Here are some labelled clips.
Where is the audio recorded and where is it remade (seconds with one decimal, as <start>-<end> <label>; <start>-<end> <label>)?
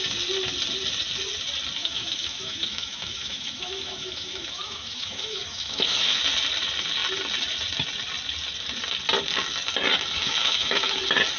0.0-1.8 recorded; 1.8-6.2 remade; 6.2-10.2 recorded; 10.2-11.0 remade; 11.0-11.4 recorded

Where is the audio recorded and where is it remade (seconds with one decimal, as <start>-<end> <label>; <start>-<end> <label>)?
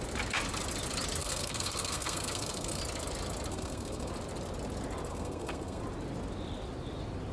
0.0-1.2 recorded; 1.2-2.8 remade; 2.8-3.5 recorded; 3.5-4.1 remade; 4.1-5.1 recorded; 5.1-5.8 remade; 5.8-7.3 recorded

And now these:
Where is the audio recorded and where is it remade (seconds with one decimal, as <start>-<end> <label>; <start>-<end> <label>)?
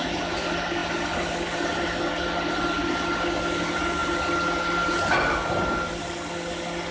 0.0-6.9 recorded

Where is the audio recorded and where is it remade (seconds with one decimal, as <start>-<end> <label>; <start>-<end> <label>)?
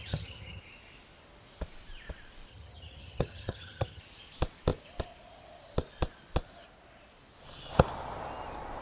0.0-0.6 remade; 0.6-2.5 recorded; 2.5-4.0 remade; 4.0-8.8 recorded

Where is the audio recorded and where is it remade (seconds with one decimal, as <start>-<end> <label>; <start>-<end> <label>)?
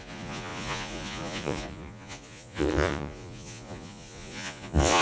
0.0-5.0 remade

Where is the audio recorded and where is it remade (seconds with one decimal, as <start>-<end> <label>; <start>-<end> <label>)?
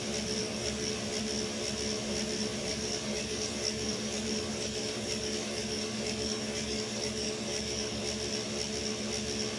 0.0-0.4 recorded; 0.4-0.9 remade; 0.9-2.7 recorded; 2.7-8.0 remade; 8.0-9.6 recorded